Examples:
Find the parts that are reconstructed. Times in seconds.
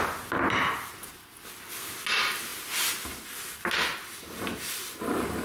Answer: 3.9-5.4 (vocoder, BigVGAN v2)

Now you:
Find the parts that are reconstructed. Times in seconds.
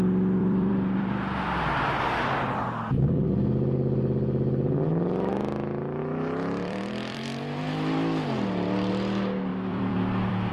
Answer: 0.4-2.2 (vocoder, BigVGAN v2); 6.0-8.9; 9.5-10.5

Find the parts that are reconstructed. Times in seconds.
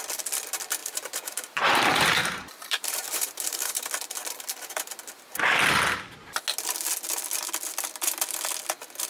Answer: 0.8-3.9 (vocoder, BigVGAN v2)